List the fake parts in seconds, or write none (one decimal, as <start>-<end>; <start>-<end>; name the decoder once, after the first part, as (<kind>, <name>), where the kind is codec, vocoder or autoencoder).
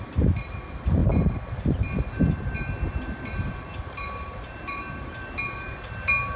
none